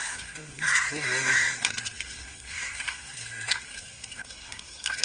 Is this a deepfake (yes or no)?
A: yes